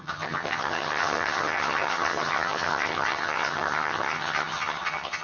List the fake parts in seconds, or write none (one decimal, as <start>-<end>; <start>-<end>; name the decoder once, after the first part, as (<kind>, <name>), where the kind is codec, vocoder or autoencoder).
0.0-5.2 (vocoder, HiFi-GAN)

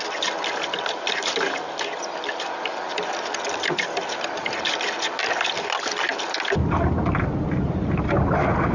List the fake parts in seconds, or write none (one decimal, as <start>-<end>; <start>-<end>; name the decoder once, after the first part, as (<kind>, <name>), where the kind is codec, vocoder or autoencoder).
none